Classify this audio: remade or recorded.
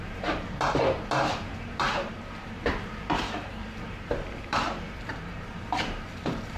remade